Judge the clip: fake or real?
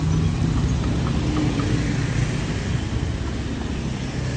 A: real